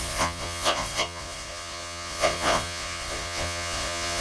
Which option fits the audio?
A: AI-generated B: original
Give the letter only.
A